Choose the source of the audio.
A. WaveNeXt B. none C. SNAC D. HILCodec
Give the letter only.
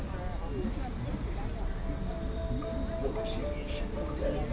B